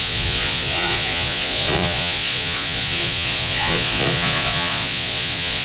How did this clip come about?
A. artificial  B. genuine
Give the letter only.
A